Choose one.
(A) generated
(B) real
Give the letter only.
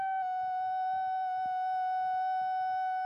B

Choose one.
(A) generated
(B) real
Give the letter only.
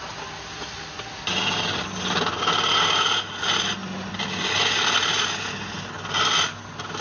B